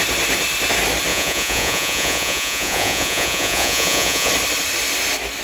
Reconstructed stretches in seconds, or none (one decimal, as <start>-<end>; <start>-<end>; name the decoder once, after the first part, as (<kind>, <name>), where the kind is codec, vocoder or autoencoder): 1.1-4.3 (vocoder, Vocos)